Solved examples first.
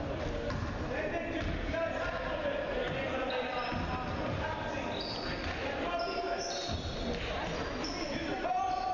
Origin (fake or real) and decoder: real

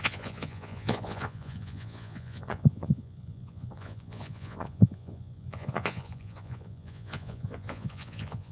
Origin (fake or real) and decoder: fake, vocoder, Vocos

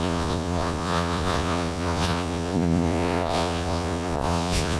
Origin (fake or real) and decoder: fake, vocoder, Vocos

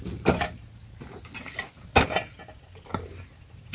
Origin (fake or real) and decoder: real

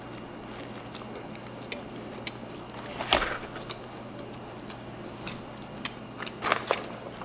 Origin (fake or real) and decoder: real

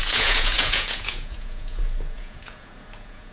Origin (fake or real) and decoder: fake, vocoder, Vocos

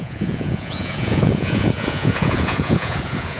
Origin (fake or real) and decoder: fake, vocoder, Vocos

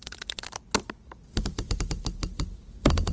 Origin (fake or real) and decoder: real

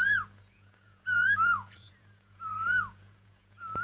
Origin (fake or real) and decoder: fake, vocoder, Vocos